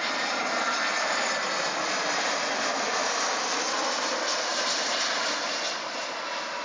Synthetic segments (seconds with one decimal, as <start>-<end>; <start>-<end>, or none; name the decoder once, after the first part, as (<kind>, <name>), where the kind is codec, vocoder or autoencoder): 4.5-6.1 (vocoder, BigVGAN v2)